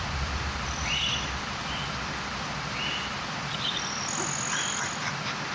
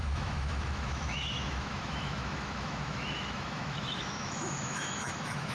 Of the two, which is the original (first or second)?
first